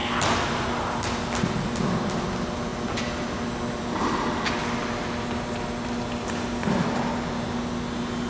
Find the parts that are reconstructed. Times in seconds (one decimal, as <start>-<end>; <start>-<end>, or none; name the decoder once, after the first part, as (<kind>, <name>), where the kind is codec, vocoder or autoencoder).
none